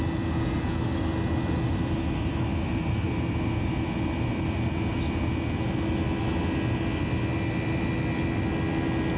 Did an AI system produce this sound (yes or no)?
no